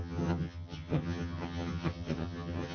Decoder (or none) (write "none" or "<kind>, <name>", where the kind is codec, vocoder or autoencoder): vocoder, HiFi-GAN